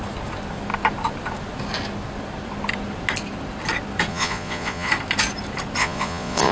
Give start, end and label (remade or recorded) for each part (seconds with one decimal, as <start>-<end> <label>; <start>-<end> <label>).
0.0-4.1 recorded; 4.1-4.9 remade; 4.9-5.8 recorded; 5.8-6.5 remade